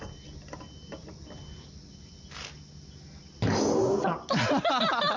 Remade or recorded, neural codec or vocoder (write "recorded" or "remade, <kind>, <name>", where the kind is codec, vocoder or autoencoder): recorded